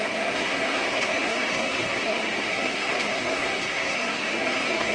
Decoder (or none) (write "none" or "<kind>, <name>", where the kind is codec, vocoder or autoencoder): codec, SNAC